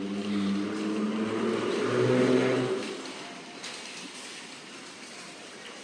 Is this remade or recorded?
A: recorded